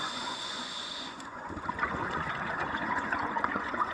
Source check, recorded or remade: remade